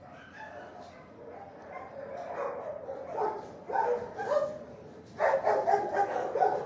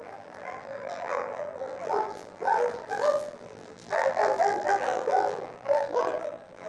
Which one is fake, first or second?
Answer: second